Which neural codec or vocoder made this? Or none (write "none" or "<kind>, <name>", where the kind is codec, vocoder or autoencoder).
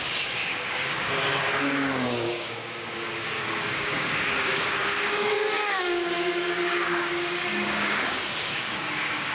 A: codec, DAC